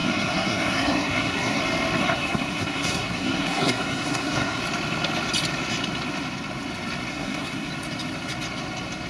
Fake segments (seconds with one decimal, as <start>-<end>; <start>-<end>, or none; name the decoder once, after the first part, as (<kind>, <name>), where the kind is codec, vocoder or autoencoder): 0.0-1.6 (codec, SNAC); 2.0-4.6; 7.1-7.7